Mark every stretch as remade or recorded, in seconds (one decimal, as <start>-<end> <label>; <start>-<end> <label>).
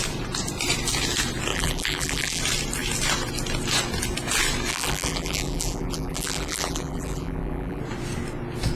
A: 0.0-1.5 recorded; 1.5-2.4 remade; 2.4-4.7 recorded; 4.7-7.8 remade; 7.8-8.8 recorded